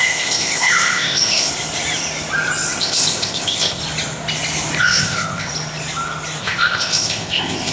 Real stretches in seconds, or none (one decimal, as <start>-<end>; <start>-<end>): 1.5-2.8; 3.8-4.8; 5.5-6.4